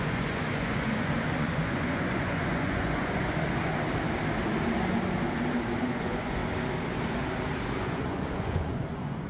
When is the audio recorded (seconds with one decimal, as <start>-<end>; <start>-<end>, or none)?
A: 3.7-5.8; 6.4-7.6